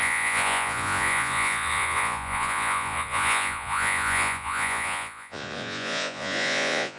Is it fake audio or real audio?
fake